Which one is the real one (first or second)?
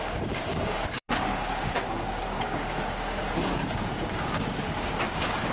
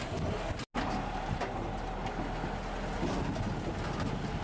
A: second